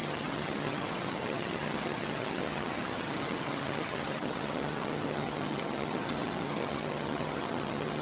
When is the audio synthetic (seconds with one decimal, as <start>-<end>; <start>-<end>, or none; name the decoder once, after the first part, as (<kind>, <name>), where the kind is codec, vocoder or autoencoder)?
0.0-8.0 (vocoder, HiFi-GAN)